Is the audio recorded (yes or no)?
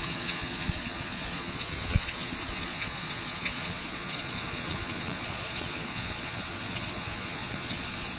no